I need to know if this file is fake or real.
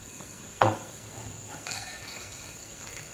fake